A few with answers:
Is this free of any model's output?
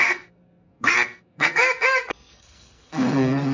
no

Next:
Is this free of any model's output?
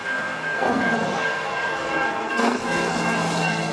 no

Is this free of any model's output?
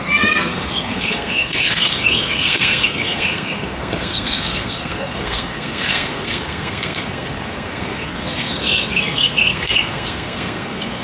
no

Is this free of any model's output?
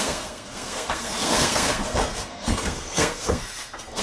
no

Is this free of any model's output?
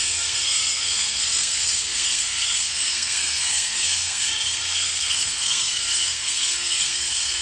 no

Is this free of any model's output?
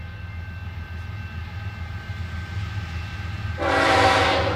yes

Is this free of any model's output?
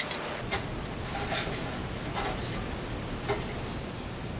yes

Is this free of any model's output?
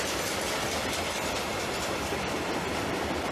yes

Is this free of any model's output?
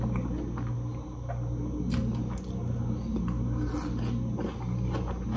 yes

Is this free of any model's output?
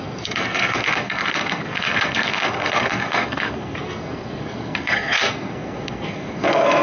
no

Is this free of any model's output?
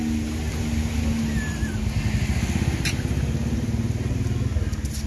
yes